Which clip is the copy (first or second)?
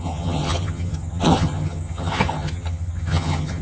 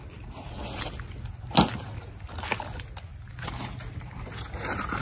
first